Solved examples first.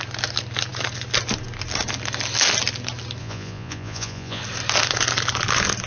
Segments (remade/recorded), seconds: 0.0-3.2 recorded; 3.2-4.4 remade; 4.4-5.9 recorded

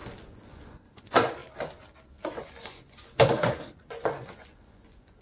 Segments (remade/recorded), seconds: 0.0-1.4 remade; 1.4-2.3 recorded; 2.3-5.2 remade

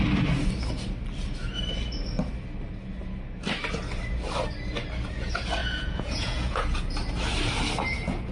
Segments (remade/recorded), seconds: 0.0-5.6 recorded; 5.6-6.6 remade; 6.6-8.3 recorded